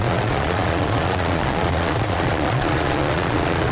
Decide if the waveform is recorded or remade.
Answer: remade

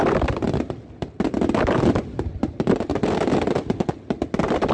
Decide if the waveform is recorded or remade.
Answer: recorded